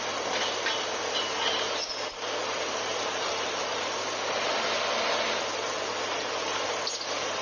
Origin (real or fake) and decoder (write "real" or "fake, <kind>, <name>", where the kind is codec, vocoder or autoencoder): real